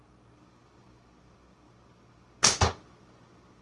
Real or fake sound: real